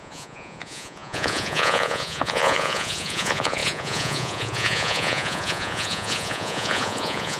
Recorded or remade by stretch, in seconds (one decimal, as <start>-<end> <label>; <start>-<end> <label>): 0.0-7.4 remade